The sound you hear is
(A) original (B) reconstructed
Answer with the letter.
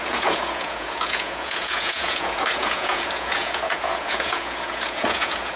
B